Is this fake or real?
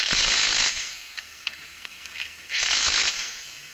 fake